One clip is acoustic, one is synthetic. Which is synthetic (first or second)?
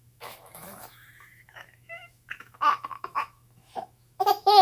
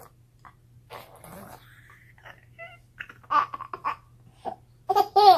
first